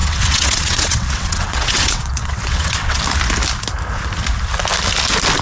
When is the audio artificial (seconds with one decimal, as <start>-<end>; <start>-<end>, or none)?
0.0-3.0